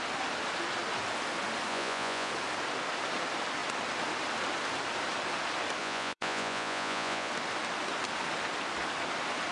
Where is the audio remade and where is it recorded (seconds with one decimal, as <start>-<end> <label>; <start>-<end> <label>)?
0.0-1.7 recorded; 1.7-2.3 remade; 2.3-5.8 recorded; 5.8-7.3 remade; 7.3-9.5 recorded